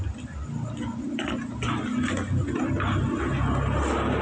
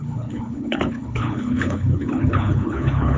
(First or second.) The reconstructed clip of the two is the second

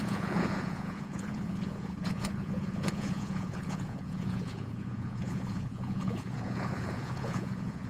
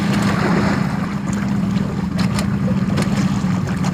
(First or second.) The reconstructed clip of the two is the first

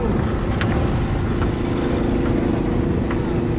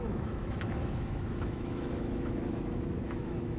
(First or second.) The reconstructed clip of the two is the second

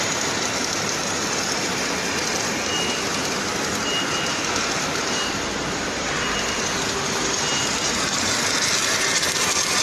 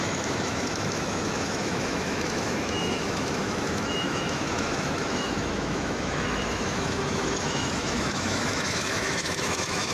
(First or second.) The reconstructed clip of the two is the second